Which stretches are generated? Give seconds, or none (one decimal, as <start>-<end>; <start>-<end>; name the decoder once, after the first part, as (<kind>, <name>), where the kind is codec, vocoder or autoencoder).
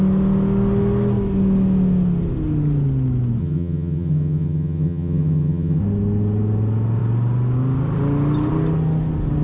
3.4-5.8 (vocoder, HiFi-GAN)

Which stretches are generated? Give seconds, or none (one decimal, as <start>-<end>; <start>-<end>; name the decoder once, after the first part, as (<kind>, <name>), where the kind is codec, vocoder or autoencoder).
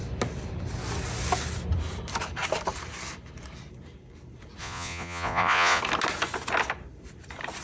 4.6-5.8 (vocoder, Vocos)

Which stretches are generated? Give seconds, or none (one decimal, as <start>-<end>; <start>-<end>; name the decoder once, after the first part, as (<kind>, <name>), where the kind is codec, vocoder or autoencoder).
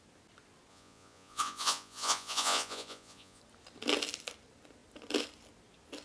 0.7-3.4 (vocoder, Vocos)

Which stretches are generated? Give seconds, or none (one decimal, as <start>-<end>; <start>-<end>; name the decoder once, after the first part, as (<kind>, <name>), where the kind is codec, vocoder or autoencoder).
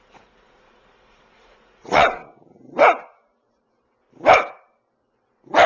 0.0-2.2 (vocoder, Vocos)